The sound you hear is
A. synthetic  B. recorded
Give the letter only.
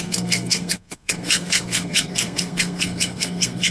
A